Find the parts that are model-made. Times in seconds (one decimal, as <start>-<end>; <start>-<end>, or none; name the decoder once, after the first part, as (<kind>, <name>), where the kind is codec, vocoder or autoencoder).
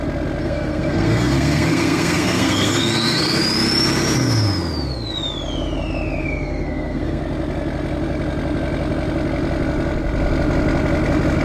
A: 0.4-3.4 (codec, SNAC); 6.2-7.2